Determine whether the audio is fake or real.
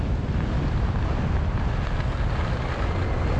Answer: real